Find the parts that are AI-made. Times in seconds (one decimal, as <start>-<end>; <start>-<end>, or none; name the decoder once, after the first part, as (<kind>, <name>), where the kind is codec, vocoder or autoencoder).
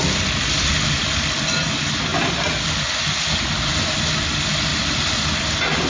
none